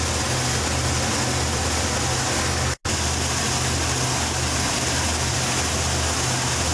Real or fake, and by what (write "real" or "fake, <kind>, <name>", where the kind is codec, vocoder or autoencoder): real